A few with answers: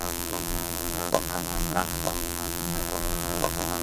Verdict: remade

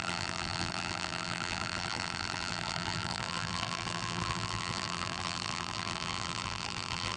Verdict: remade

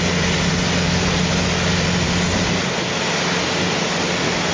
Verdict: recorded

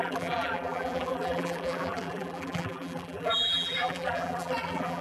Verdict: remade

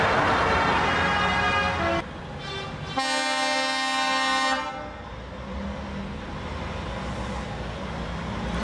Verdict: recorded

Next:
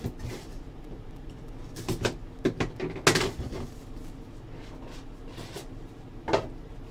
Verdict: recorded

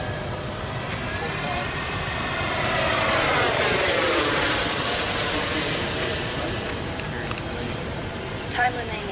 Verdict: remade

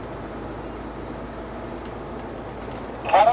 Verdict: recorded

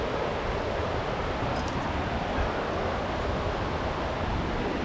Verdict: recorded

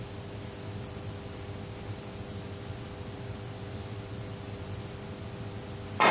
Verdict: recorded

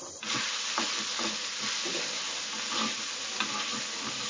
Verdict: recorded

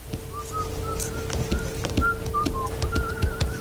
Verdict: recorded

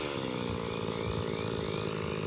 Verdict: recorded